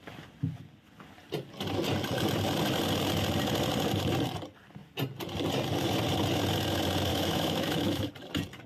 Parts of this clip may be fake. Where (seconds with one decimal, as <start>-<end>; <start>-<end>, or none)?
7.1-8.1